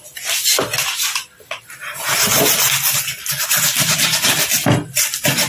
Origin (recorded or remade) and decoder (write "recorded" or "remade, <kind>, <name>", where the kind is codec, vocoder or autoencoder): recorded